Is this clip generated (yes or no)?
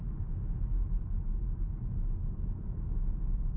no